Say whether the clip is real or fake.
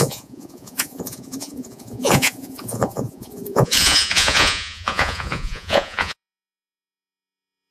fake